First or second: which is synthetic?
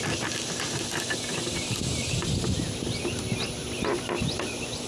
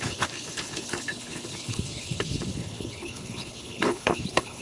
second